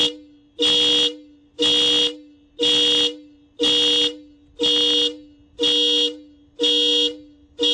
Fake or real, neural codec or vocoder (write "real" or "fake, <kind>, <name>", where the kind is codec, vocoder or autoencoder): real